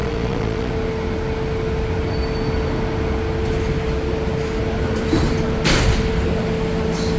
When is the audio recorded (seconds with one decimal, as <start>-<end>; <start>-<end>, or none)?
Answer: 0.7-7.2